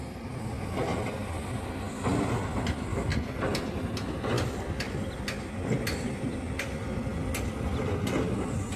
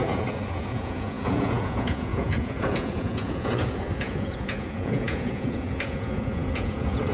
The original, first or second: first